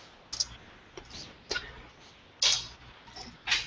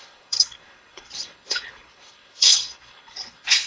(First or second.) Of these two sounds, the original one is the first